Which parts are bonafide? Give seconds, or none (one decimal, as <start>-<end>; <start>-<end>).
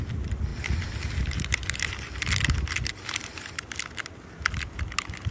0.0-0.5; 3.5-5.3